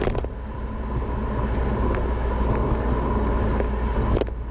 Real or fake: real